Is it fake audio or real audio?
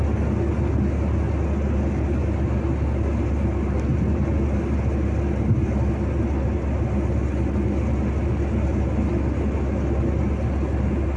real